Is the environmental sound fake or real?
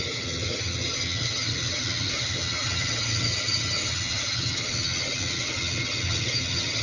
fake